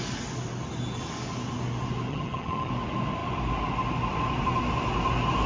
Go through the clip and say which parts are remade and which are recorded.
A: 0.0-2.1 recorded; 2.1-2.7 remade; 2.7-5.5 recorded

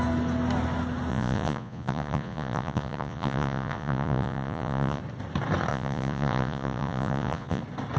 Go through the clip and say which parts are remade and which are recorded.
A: 0.0-1.1 recorded; 1.1-5.0 remade; 5.0-5.7 recorded; 5.7-7.6 remade; 7.6-8.0 recorded

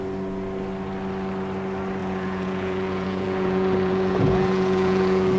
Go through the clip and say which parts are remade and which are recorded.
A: 0.0-2.0 recorded; 2.0-5.4 remade